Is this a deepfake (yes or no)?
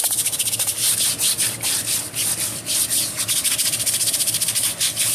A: no